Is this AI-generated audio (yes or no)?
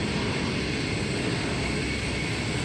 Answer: no